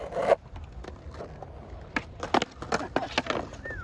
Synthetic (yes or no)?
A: no